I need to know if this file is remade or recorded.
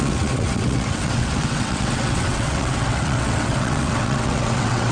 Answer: remade